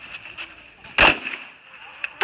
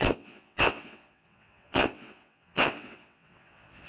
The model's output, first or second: second